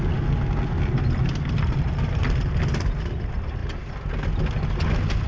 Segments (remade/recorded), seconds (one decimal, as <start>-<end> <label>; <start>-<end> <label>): 0.0-5.3 recorded